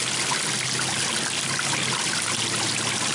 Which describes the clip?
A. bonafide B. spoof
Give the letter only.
A